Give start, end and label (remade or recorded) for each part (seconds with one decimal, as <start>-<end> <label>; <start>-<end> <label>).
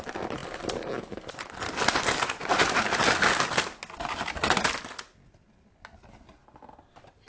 0.0-7.3 recorded